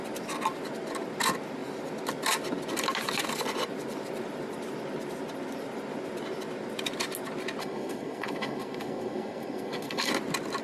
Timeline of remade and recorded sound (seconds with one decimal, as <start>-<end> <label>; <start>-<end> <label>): 0.0-7.6 recorded; 7.6-10.1 remade; 10.1-10.6 recorded